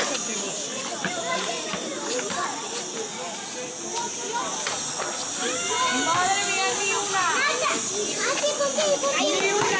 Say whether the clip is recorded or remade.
recorded